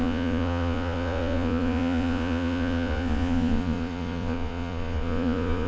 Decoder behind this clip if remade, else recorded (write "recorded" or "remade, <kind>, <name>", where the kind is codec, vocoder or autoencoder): remade, vocoder, Vocos